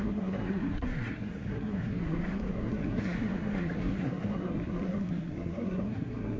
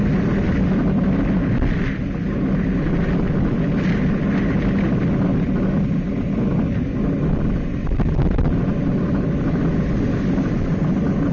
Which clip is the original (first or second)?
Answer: second